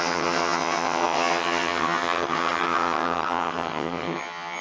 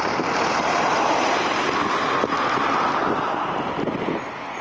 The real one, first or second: second